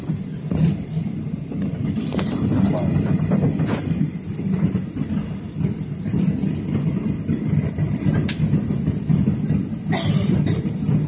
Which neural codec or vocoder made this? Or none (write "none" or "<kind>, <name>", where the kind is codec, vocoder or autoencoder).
none